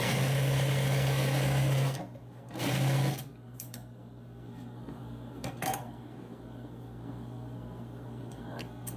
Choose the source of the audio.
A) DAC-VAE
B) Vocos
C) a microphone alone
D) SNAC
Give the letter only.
D